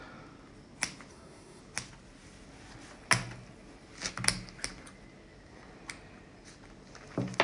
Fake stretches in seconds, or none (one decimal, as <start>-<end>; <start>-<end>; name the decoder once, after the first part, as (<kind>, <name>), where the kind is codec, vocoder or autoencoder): 1.1-1.6 (codec, SNAC)